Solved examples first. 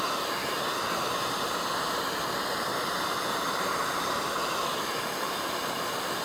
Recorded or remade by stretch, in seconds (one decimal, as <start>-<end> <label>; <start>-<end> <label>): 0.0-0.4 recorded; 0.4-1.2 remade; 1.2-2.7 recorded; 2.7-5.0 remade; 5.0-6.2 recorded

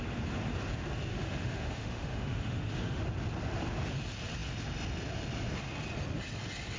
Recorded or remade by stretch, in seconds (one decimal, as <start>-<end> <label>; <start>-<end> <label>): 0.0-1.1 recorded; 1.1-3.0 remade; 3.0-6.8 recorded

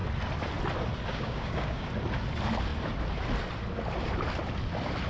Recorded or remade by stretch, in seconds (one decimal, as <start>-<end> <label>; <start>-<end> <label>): 0.0-1.1 recorded; 1.1-1.9 remade; 1.9-5.1 recorded

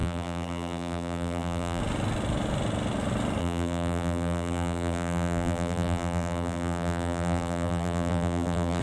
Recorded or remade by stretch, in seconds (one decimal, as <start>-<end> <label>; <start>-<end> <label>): 0.0-1.8 remade; 1.8-3.4 recorded; 3.4-8.8 remade

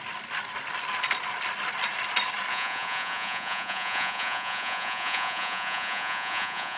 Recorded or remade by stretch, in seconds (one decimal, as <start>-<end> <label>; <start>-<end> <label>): 0.0-2.5 recorded; 2.5-6.8 remade